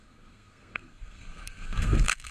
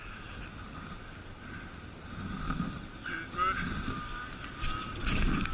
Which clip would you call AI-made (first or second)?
first